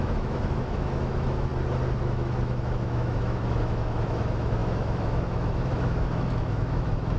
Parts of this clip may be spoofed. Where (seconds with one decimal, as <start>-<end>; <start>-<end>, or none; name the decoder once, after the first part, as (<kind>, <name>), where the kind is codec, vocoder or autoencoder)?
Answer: 0.0-1.5 (autoencoder, DAC-VAE); 2.0-7.2